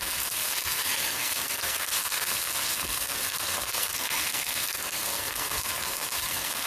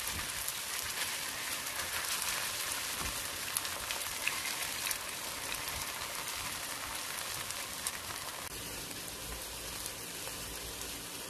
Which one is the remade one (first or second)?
first